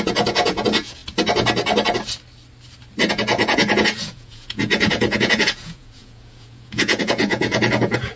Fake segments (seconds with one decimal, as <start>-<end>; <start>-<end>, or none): 0.0-1.0; 3.1-8.2